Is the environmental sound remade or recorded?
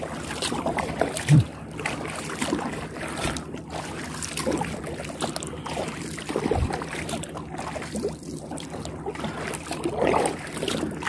remade